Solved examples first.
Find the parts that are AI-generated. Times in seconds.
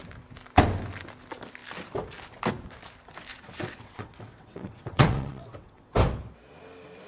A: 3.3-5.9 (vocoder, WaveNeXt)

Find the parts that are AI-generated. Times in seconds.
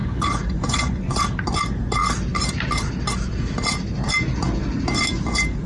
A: 0.0-1.2 (vocoder, Vocos)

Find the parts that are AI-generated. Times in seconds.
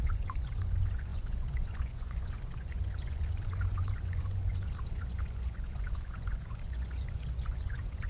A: 0.0-8.1 (vocoder, Vocos)